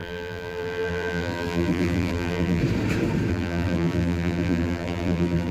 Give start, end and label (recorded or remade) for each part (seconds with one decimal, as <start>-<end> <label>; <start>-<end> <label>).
0.0-2.6 remade; 2.6-3.3 recorded; 3.3-5.5 remade